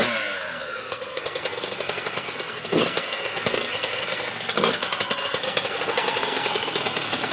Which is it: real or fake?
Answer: fake